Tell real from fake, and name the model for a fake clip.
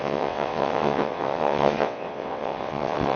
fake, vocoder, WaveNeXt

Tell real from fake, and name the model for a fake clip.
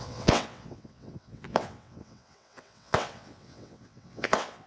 fake, vocoder, WaveNeXt